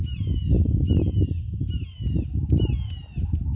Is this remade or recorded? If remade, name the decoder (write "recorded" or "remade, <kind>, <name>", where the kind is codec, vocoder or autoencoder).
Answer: recorded